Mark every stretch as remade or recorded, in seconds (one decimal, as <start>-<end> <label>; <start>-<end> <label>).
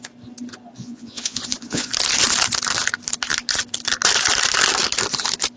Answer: 0.0-0.8 recorded; 0.8-1.9 remade; 1.9-5.6 recorded